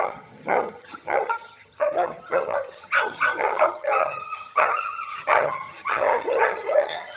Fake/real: fake